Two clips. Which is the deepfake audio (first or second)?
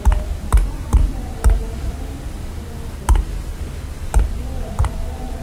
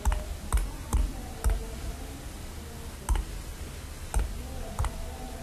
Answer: first